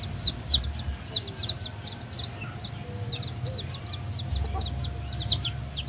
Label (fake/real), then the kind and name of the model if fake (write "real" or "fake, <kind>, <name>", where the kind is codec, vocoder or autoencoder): real